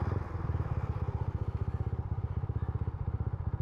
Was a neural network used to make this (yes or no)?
no